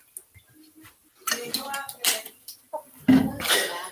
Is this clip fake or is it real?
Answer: real